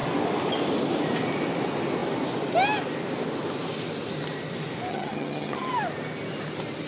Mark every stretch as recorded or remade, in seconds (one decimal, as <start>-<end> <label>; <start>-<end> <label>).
0.0-4.9 recorded; 4.9-5.7 remade; 5.7-6.9 recorded